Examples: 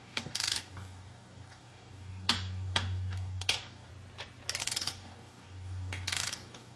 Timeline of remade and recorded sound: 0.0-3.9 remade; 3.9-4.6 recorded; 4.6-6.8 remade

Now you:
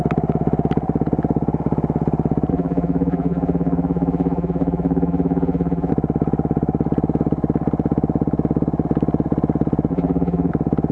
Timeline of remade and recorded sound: 0.0-2.5 recorded; 2.5-5.9 remade; 5.9-9.9 recorded; 9.9-10.5 remade; 10.5-10.9 recorded

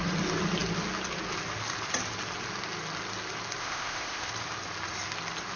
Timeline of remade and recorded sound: 0.0-3.6 recorded; 3.6-4.3 remade; 4.3-5.6 recorded